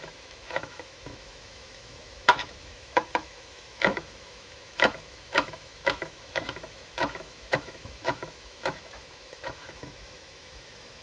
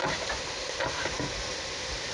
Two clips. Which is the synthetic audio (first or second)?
first